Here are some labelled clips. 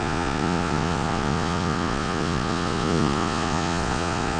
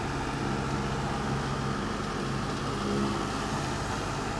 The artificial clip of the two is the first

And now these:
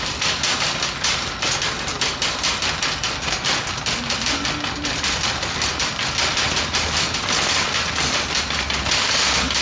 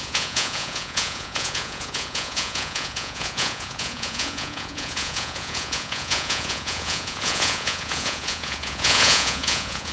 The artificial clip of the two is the second